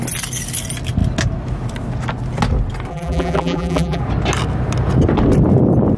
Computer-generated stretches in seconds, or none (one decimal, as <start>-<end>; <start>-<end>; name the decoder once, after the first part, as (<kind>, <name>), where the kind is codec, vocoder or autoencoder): 2.9-4.0 (vocoder, BigVGAN v2)